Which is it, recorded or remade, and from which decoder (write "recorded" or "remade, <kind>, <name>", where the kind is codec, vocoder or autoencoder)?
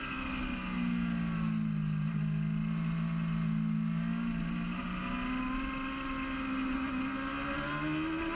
recorded